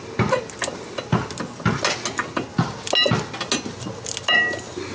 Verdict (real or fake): real